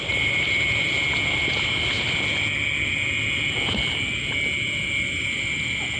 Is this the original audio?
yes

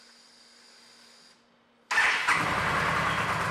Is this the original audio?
yes